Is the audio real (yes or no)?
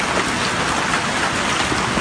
yes